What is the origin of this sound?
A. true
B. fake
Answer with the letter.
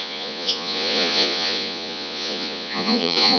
B